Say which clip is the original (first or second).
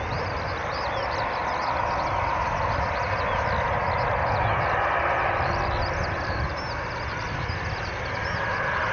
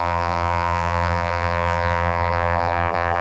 first